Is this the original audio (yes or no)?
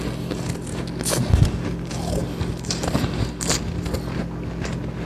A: yes